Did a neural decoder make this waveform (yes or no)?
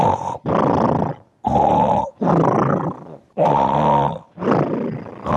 no